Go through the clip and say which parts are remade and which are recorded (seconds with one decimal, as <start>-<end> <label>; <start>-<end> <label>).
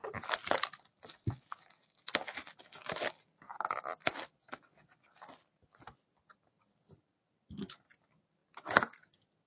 0.0-9.5 recorded